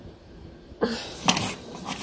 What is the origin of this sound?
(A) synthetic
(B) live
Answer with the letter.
B